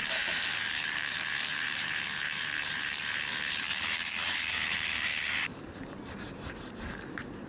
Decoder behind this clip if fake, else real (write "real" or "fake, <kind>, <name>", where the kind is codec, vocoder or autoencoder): fake, vocoder, BigVGAN v2